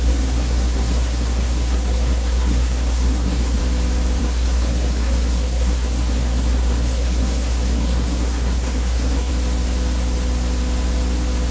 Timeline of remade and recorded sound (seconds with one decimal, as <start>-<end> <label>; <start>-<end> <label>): 0.0-3.6 remade; 3.6-4.2 recorded; 4.2-9.3 remade; 9.3-11.5 recorded